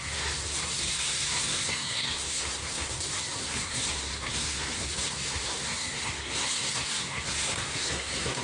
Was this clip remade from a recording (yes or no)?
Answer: yes